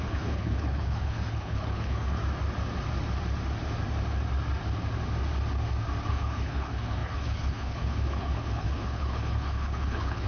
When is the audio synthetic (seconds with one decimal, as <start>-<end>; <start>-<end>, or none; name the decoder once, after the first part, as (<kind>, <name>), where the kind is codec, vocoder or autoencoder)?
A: 0.0-2.2 (codec, HILCodec); 6.1-10.3